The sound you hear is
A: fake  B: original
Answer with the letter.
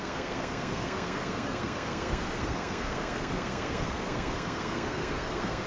A